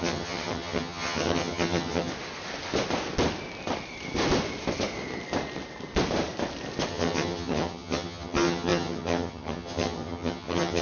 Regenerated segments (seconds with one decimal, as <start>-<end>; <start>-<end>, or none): 0.0-2.1; 6.9-10.8